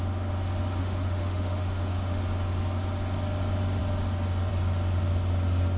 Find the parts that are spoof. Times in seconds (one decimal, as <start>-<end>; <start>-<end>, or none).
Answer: 0.8-2.2